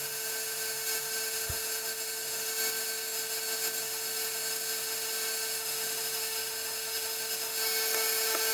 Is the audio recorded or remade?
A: remade